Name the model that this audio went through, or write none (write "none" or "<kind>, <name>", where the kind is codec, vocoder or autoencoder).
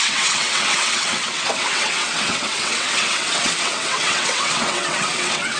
vocoder, WaveNeXt